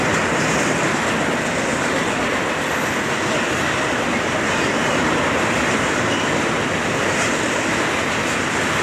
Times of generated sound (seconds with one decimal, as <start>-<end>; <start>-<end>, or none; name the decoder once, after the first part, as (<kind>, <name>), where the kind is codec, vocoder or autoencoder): 1.7-3.8 (vocoder, BigVGAN v2)